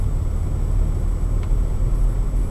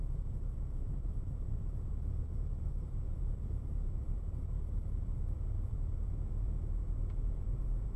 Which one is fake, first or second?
second